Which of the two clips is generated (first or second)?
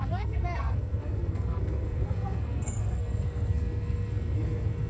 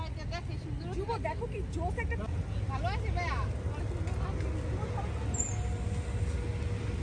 first